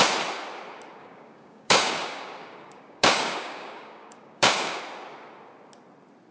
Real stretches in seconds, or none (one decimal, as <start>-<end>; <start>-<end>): 0.0-1.0; 4.8-6.3

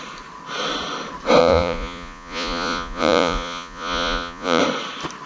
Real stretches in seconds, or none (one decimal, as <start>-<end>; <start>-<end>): 0.0-1.4; 4.6-5.3

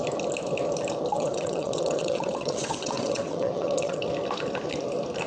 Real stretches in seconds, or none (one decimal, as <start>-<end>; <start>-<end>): 0.0-1.1; 4.0-5.3

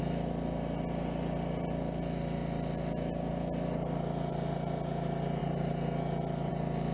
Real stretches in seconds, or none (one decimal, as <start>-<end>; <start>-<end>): 0.0-6.9